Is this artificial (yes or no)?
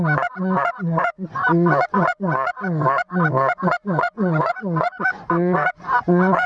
yes